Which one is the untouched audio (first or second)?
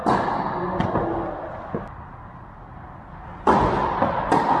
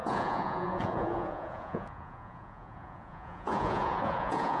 first